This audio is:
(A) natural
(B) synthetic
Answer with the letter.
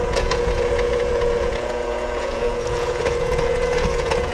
B